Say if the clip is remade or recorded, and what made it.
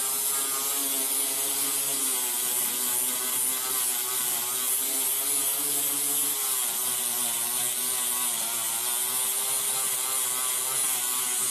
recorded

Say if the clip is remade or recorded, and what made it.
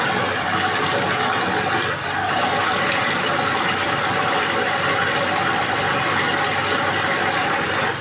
recorded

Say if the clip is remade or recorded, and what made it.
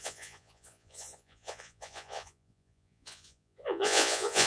remade, vocoder, Vocos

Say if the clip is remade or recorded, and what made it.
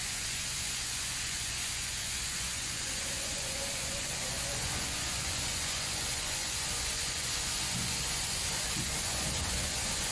remade, vocoder, Vocos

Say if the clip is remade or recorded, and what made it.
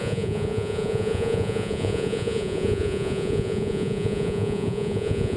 remade, vocoder, Vocos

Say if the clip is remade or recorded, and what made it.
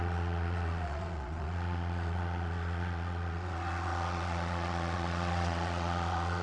remade, vocoder, Vocos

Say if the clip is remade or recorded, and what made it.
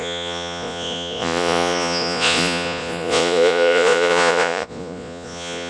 remade, vocoder, Vocos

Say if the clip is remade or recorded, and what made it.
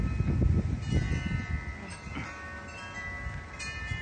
recorded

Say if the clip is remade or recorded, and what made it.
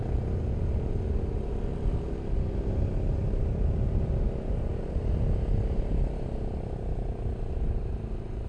recorded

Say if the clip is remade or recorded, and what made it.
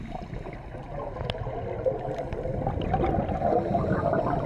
recorded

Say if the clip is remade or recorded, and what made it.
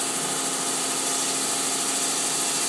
recorded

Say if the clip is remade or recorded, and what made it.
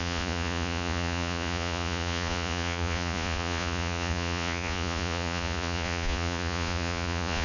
remade, vocoder, Vocos